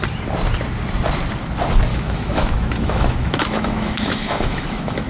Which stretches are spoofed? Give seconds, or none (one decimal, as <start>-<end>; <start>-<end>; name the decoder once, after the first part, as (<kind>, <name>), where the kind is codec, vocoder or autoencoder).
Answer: 1.9-5.1 (autoencoder, DAC-VAE)